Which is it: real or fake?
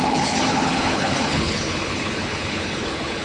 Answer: fake